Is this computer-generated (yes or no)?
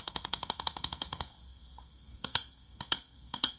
yes